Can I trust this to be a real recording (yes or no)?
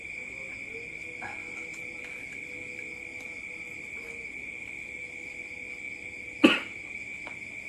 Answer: yes